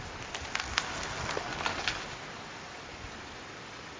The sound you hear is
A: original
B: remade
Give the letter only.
A